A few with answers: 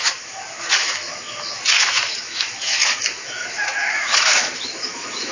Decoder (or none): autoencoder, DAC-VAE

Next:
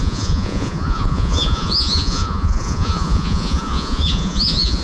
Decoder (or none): vocoder, Vocos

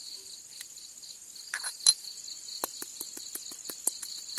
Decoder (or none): none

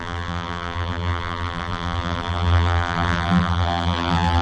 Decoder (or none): vocoder, BigVGAN v2